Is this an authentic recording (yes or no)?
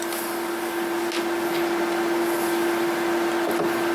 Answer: yes